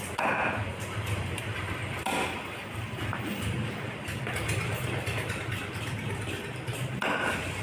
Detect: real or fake fake